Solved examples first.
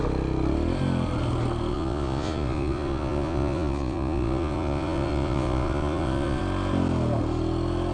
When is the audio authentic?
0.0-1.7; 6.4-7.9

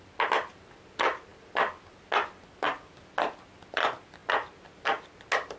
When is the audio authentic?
0.0-5.6